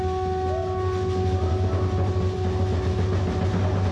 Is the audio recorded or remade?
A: recorded